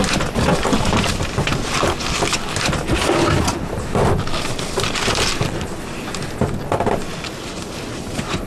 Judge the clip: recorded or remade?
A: recorded